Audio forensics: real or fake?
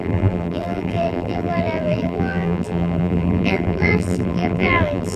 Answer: fake